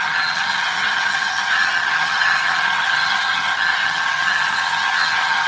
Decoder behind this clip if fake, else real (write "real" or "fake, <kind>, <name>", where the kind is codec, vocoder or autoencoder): fake, vocoder, HiFi-GAN